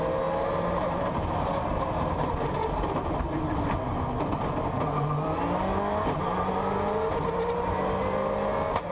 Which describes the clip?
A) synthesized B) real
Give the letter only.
B